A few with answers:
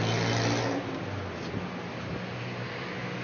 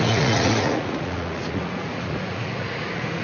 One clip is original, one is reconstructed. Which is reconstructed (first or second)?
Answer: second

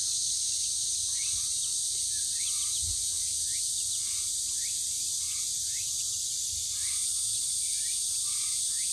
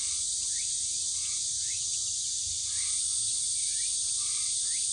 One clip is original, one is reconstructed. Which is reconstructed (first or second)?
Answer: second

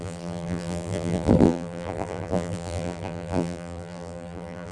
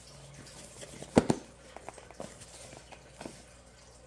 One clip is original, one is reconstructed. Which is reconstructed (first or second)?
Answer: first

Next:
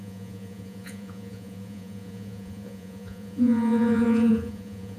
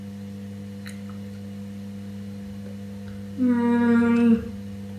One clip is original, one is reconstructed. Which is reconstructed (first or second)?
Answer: first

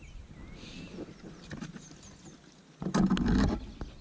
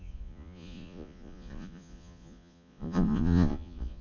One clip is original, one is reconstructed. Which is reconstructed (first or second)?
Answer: second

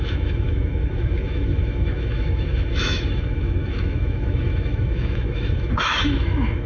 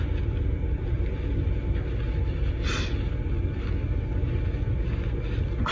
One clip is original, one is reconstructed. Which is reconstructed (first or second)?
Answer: first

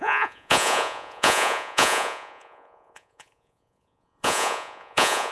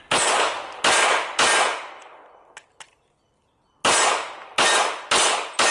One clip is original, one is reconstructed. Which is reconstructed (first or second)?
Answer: first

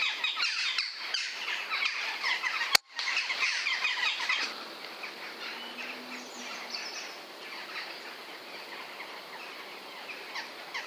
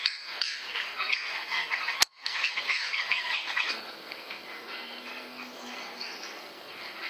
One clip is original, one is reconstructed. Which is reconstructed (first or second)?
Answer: second